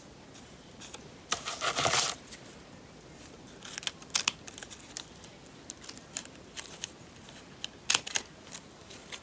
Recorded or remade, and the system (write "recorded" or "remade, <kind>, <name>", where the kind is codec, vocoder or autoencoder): recorded